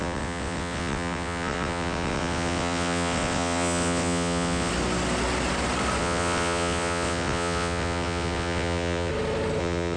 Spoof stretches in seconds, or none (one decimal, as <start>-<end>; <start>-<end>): 0.0-4.7; 6.0-9.1; 9.6-10.0